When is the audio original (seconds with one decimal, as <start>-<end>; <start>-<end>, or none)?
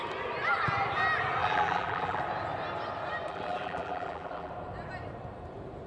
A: 0.0-1.4; 2.2-3.3; 4.5-5.9